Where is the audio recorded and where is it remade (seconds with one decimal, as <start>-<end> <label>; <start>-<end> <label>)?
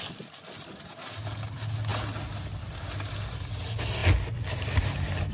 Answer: 0.0-5.3 recorded